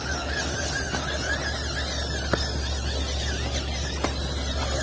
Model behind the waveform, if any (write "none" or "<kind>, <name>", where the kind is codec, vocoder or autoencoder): none